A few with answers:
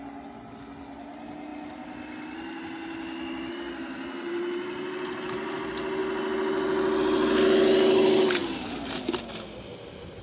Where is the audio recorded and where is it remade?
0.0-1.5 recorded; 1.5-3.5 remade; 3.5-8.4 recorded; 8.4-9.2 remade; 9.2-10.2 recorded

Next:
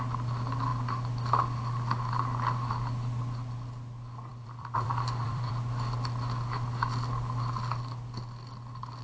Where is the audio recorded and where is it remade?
0.0-4.3 recorded; 4.3-5.5 remade; 5.5-9.0 recorded

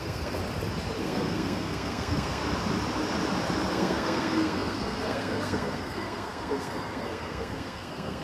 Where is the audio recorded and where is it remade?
0.0-0.4 remade; 0.4-1.0 recorded; 1.0-2.4 remade; 2.4-3.7 recorded; 3.7-8.2 remade

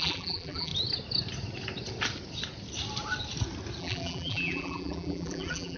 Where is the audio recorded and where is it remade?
0.0-0.7 remade; 0.7-3.8 recorded; 3.8-5.8 remade